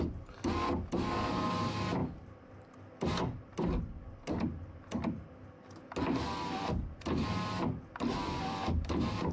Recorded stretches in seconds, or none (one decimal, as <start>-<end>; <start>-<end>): 0.0-9.3